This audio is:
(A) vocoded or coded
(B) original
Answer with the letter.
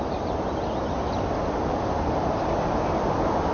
B